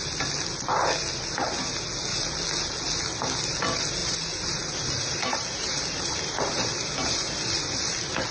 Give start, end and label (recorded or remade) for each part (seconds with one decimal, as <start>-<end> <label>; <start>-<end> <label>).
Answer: 0.0-4.0 recorded; 4.0-7.5 remade; 7.5-8.3 recorded